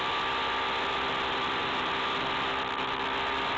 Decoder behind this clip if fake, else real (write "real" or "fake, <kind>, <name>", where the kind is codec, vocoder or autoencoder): real